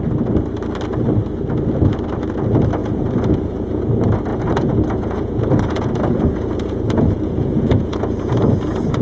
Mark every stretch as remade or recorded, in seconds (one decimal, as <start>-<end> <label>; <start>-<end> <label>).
0.0-2.8 recorded; 2.8-3.8 remade; 3.8-4.3 recorded; 4.3-9.0 remade